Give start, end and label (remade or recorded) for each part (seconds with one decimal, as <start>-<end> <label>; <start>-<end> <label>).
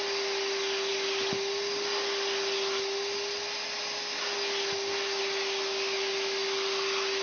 0.0-7.2 recorded